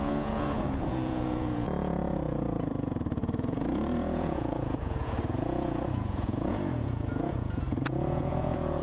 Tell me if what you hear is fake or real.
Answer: fake